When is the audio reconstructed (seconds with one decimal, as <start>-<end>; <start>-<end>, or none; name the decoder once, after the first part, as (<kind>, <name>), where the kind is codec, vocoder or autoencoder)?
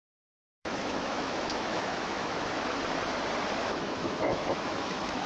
0.5-2.8 (autoencoder, DAC-VAE); 3.6-5.3